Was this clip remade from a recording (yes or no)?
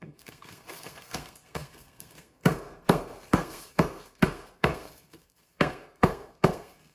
yes